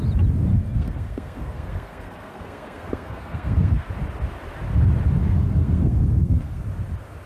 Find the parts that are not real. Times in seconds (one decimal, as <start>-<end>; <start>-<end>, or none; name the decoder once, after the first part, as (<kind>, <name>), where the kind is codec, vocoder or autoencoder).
0.5-3.9 (codec, SNAC); 5.2-6.6